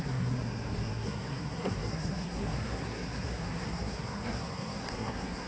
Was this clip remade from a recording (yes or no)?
yes